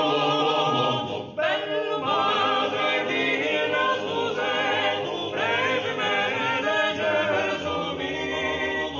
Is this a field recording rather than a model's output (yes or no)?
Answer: yes